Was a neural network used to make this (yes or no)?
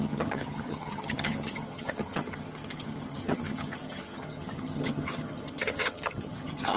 yes